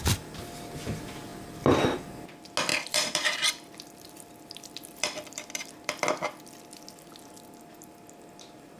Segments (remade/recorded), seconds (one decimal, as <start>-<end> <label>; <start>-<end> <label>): 0.0-2.7 recorded; 2.7-6.4 remade; 6.4-8.8 recorded